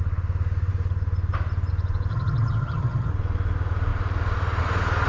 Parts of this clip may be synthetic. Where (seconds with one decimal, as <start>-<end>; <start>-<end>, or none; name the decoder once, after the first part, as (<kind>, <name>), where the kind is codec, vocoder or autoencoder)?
2.1-3.1 (vocoder, HiFi-GAN)